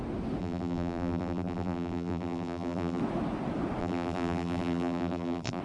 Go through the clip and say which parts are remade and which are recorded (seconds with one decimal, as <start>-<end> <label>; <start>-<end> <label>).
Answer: 0.0-0.4 recorded; 0.4-3.0 remade; 3.0-3.8 recorded; 3.8-5.6 remade